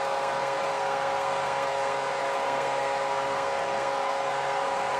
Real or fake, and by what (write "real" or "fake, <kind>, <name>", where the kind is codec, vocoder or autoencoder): fake, codec, SNAC